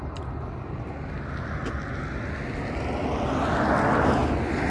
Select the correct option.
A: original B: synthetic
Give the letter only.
A